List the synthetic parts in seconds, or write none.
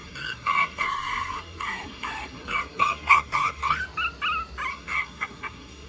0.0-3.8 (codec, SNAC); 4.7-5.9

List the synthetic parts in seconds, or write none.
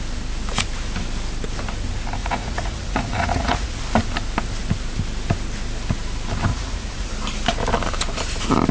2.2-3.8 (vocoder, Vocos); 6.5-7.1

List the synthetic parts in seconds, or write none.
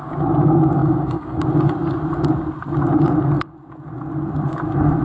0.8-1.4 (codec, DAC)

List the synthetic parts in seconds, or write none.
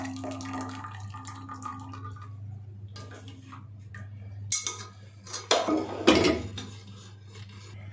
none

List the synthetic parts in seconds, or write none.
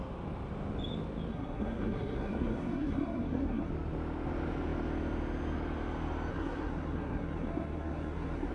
1.3-3.7 (codec, SNAC); 6.3-8.5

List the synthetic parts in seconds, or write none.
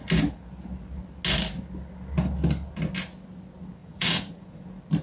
3.8-4.6 (vocoder, Vocos)